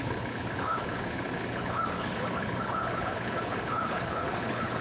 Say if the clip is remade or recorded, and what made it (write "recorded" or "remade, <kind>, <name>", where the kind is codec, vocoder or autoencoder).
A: remade, codec, HILCodec